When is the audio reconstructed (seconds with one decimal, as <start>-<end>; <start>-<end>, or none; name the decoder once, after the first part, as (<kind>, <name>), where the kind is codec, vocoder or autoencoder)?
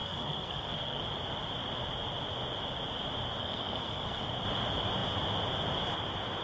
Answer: 0.0-1.0 (codec, SNAC); 3.4-4.3